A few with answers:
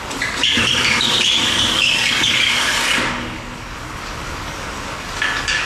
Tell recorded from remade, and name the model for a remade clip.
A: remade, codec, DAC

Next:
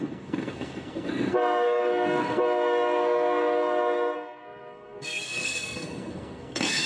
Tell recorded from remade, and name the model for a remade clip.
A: remade, codec, SNAC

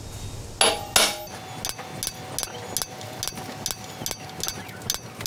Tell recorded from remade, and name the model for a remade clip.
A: recorded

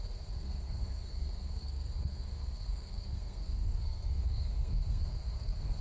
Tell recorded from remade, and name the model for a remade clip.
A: remade, codec, SNAC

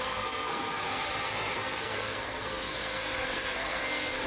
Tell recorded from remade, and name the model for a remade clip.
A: remade, codec, SNAC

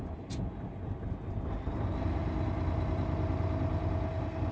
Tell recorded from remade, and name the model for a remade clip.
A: recorded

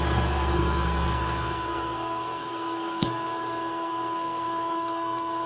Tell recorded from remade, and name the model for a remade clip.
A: remade, codec, SNAC